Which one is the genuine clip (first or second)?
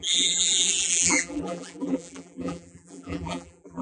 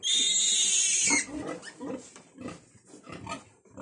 second